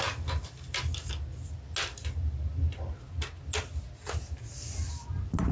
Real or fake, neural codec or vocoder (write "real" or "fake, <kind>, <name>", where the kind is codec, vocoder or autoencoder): real